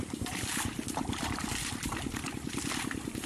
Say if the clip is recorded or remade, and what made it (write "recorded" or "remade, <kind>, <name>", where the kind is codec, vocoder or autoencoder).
remade, vocoder, BigVGAN v2